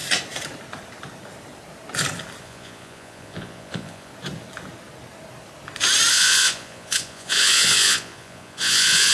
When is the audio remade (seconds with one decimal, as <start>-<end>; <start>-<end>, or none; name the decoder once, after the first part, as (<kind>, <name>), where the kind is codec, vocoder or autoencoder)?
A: 2.4-4.1 (vocoder, Vocos); 6.1-9.1